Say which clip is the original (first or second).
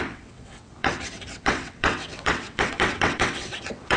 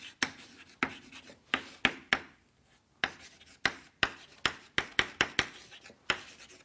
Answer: second